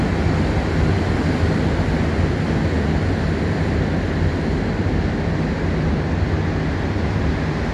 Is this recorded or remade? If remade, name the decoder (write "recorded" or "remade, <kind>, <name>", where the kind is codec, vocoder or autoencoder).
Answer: recorded